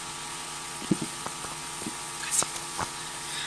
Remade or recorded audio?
remade